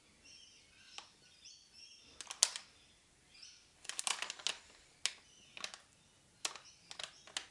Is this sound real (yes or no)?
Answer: yes